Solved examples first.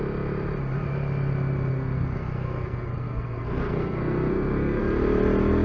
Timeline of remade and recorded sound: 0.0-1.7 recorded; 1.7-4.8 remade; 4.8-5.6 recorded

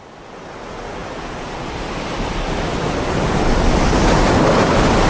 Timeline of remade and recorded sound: 0.0-1.0 recorded; 1.0-4.1 remade; 4.1-5.1 recorded